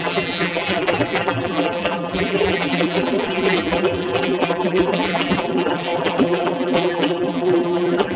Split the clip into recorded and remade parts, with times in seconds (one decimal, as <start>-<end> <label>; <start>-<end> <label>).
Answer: 0.0-8.2 remade